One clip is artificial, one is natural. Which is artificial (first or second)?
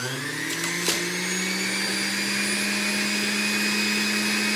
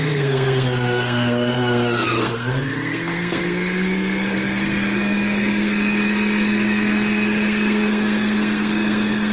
second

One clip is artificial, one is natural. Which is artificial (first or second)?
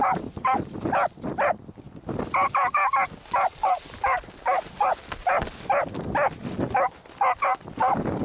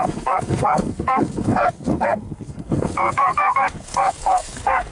second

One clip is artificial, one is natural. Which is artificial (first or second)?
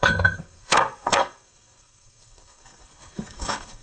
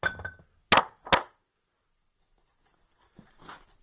first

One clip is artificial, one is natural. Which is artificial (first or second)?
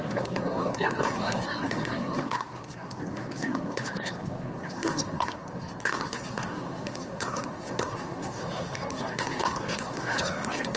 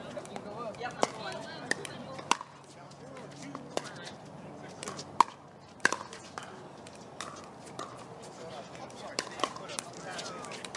first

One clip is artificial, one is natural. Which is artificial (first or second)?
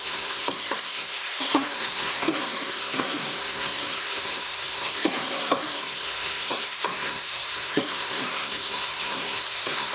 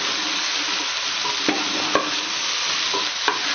first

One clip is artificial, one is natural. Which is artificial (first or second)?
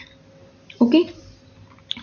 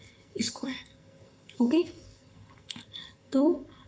second